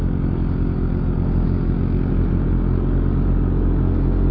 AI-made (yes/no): no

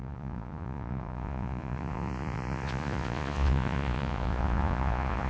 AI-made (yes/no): yes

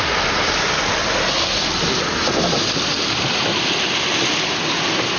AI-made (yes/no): no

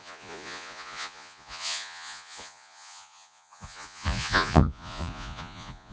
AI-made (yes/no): yes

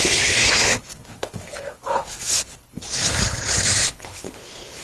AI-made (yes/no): yes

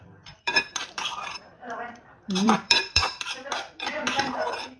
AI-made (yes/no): yes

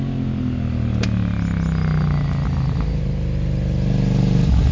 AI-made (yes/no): no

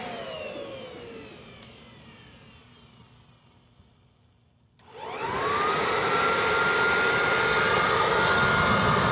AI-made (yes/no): no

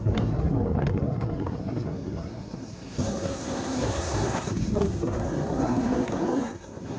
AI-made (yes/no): yes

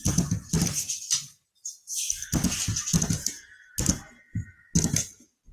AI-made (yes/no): no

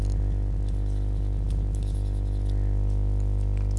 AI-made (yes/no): no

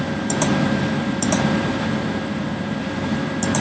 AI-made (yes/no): yes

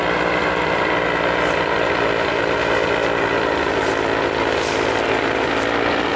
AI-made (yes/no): no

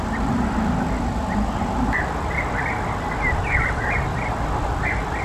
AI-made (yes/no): no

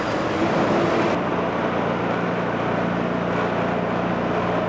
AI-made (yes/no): no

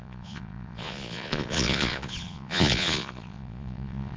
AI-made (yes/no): yes